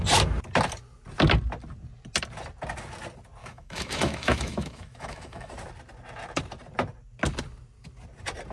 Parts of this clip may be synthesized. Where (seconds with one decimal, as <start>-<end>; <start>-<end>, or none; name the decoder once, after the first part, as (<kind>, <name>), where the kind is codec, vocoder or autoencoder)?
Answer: 3.4-5.5 (autoencoder, DAC-VAE)